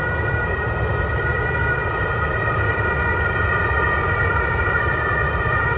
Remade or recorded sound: recorded